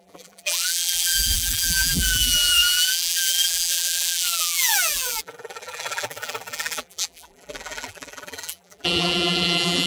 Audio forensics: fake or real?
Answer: fake